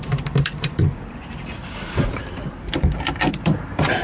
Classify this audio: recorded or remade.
remade